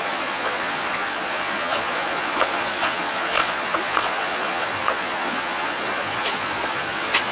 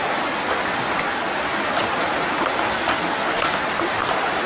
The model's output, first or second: first